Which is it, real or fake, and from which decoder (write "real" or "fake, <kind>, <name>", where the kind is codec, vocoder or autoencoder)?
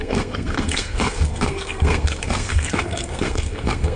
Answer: fake, codec, SNAC